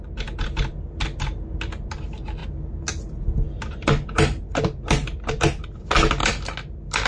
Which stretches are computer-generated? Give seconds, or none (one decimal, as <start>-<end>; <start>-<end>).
none